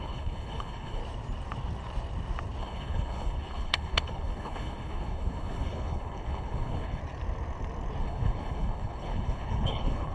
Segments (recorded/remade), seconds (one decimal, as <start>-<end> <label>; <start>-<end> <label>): 0.0-1.0 remade; 1.0-2.6 recorded; 2.6-7.0 remade; 7.0-8.0 recorded; 8.0-10.1 remade